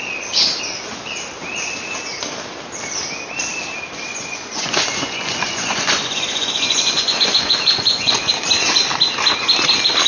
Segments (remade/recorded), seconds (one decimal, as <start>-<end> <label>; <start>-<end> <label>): 0.0-4.1 recorded; 4.1-8.3 remade; 8.3-10.1 recorded